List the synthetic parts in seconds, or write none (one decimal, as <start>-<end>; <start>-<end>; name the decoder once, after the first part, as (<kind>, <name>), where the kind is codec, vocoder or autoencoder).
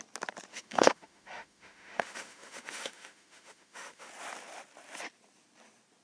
0.5-4.1 (autoencoder, DAC-VAE)